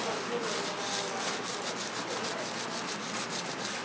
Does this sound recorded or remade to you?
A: recorded